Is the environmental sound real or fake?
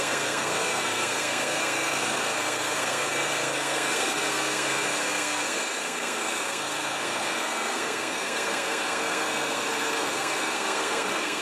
fake